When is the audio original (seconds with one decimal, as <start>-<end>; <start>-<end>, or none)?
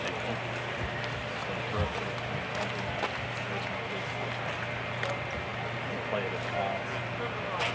0.0-7.7